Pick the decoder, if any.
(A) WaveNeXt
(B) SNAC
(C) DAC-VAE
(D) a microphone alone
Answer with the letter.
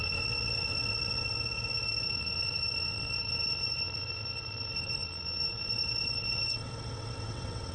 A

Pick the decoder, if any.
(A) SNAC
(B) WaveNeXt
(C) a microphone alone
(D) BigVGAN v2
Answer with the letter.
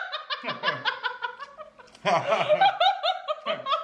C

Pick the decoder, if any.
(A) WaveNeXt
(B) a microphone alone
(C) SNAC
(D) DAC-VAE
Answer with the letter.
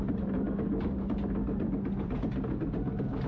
B